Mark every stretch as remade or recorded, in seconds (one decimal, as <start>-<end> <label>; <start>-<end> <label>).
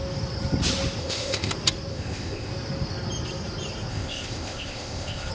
0.0-1.0 recorded; 1.0-1.5 remade; 1.5-1.9 recorded; 1.9-2.5 remade; 2.5-3.9 recorded; 3.9-5.3 remade